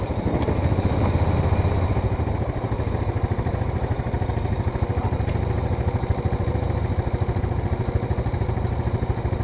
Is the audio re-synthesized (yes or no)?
no